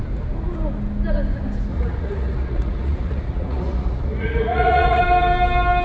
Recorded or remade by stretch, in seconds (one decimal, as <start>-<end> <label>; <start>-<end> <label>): 0.0-1.7 recorded; 1.7-5.0 remade; 5.0-5.8 recorded